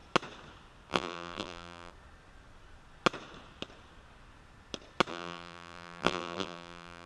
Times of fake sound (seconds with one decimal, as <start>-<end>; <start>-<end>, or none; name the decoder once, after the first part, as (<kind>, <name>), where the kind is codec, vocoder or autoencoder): 0.9-1.9 (vocoder, BigVGAN v2); 5.1-7.1